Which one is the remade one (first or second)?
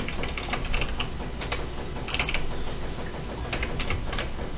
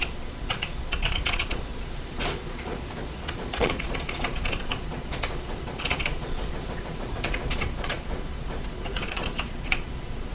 second